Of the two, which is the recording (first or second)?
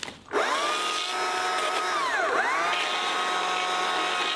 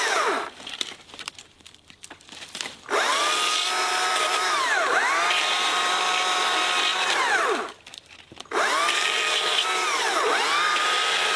first